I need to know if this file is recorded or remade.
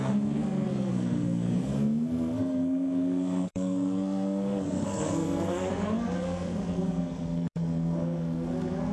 remade